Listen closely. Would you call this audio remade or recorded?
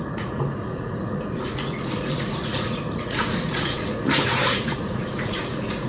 remade